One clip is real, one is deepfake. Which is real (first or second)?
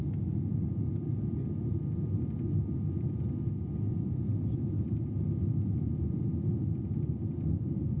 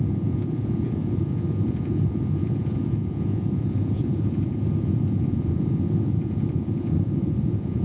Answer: first